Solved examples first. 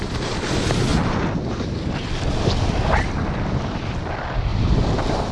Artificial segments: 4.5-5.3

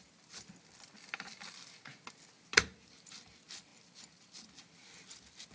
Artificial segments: 2.5-3.1; 3.7-4.5

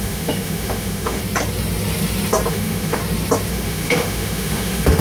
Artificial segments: 0.0-1.2; 2.5-3.0; 3.5-5.0

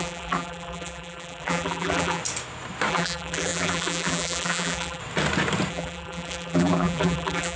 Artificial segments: 0.0-2.2; 2.9-5.0; 5.7-7.6

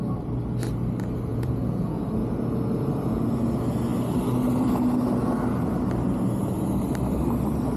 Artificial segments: 1.3-2.0

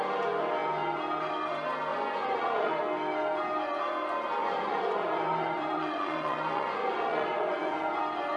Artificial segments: 1.9-2.8; 4.4-8.0